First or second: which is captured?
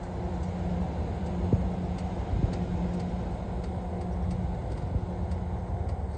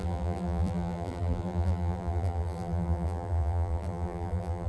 first